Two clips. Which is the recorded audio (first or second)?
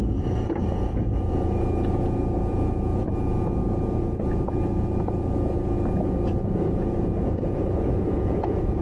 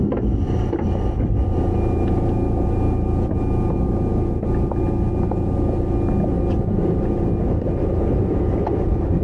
second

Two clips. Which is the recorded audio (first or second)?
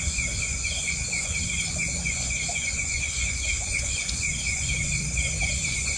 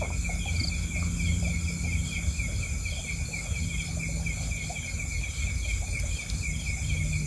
second